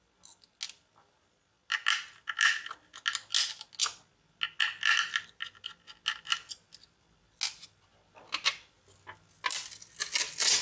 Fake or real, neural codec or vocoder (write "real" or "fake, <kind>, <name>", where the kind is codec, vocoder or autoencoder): real